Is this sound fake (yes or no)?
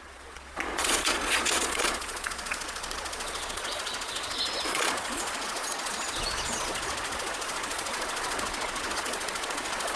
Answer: yes